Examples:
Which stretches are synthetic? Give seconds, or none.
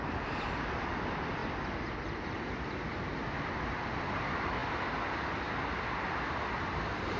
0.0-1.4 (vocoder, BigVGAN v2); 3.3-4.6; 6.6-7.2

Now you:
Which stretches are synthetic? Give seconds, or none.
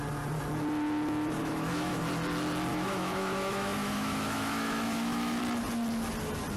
1.4-2.0 (autoencoder, DAC-VAE); 2.7-5.4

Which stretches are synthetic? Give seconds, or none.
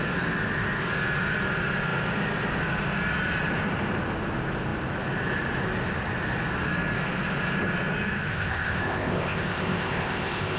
8.3-10.6 (codec, ZipCodec)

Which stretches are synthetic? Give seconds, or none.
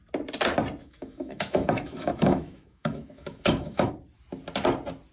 0.8-3.9 (autoencoder, DAC-VAE)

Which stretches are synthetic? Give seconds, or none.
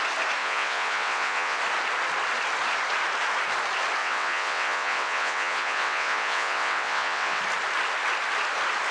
0.4-1.6 (vocoder, WaveNeXt); 4.0-7.4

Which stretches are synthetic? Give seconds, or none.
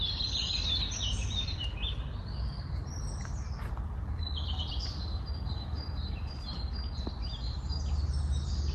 none